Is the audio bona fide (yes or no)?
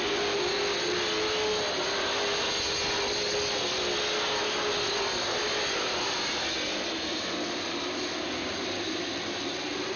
yes